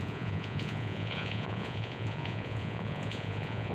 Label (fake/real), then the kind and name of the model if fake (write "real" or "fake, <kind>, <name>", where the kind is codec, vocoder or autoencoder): fake, vocoder, Vocos